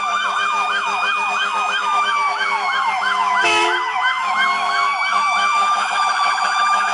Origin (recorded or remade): remade